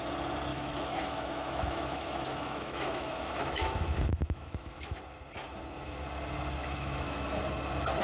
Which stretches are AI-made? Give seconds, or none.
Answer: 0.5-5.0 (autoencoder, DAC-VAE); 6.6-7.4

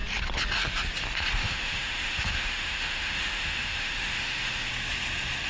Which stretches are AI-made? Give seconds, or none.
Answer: 1.4-4.7 (autoencoder, DAC-VAE)

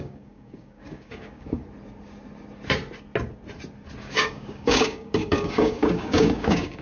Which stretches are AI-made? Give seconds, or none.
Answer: 0.0-1.6 (codec, DAC); 4.0-6.8

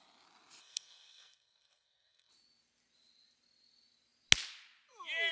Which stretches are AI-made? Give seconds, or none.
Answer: 0.6-2.3 (codec, SNAC)

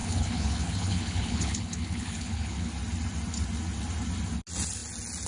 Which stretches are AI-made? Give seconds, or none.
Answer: 0.0-2.7 (codec, HILCodec)

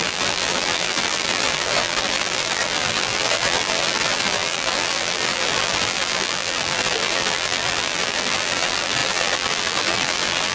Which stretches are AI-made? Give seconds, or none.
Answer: 0.0-10.5 (vocoder, BigVGAN v2)

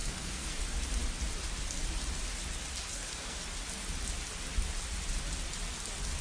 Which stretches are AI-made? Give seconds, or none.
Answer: 0.0-0.6 (codec, SNAC); 2.9-3.4